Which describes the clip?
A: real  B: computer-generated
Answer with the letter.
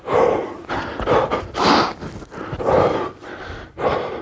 A